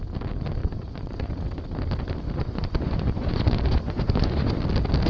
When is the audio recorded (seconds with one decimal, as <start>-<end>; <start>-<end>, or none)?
0.0-0.6; 1.3-2.4; 4.6-5.1